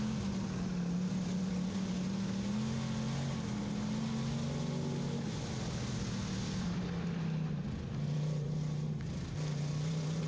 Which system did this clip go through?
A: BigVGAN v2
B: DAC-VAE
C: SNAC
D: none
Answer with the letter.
D